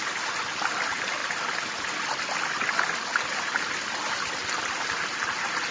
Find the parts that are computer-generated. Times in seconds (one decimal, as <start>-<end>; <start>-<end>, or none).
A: none